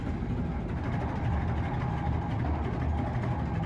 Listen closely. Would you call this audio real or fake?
real